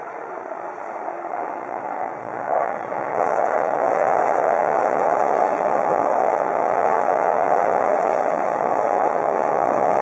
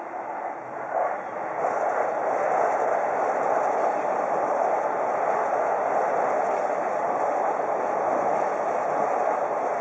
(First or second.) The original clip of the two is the second